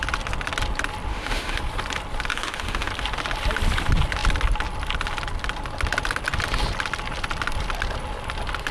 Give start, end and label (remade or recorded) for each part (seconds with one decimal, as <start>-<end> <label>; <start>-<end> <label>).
0.0-1.1 recorded; 1.1-1.6 remade; 1.6-2.3 recorded; 2.3-2.9 remade; 2.9-8.7 recorded